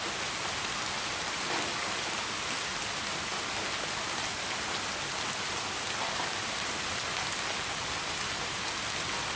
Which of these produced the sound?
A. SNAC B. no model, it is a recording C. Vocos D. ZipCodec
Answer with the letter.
B